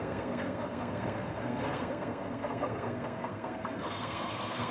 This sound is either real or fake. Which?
fake